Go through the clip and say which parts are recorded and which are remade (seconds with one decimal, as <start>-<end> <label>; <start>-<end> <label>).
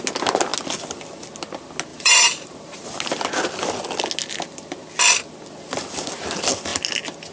0.0-1.9 recorded; 1.9-2.8 remade; 2.8-7.3 recorded